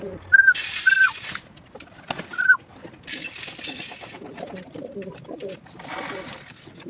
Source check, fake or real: real